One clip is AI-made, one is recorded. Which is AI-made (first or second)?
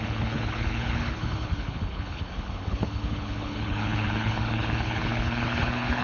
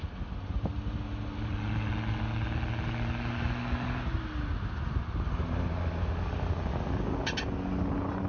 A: first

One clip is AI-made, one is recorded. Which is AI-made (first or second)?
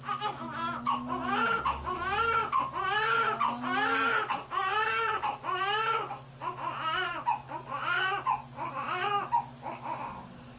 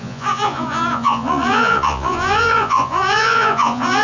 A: second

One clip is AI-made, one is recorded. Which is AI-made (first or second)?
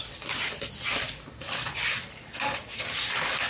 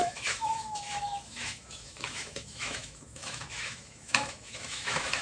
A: second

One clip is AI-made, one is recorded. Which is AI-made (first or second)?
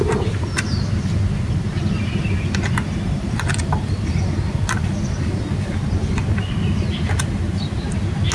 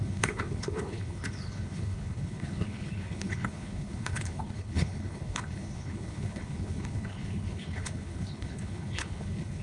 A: second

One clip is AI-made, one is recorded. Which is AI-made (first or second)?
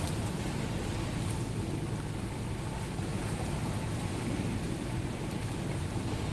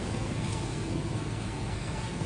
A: second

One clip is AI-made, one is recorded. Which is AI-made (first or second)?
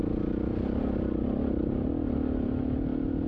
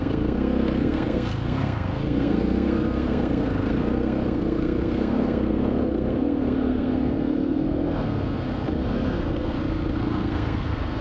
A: second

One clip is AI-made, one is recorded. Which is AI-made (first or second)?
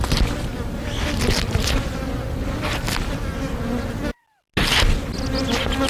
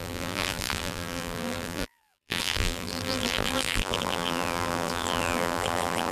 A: second